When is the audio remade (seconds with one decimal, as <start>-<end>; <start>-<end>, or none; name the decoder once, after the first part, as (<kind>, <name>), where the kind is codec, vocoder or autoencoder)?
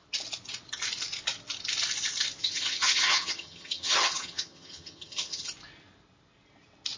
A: 2.4-5.5 (vocoder, HiFi-GAN)